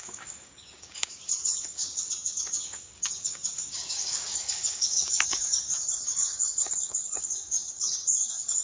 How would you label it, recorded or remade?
remade